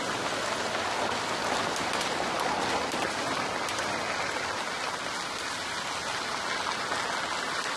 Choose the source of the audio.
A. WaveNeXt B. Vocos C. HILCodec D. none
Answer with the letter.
D